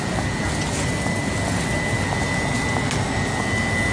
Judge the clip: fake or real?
real